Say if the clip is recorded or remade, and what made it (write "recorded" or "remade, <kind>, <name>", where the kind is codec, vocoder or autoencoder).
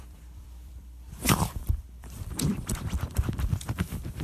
remade, vocoder, BigVGAN v2